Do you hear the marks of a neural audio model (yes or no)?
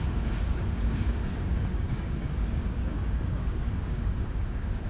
yes